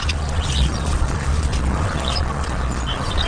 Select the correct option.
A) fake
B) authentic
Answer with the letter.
A